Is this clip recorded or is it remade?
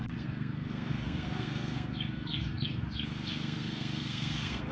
remade